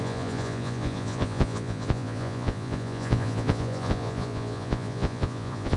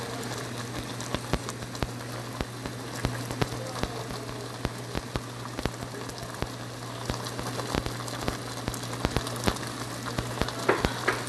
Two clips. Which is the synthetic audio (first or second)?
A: first